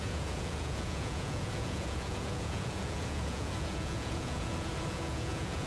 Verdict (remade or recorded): remade